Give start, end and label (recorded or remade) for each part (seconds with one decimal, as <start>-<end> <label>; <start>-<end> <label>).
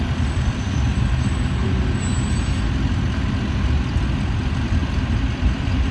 0.0-1.6 remade; 1.6-3.3 recorded; 3.3-5.9 remade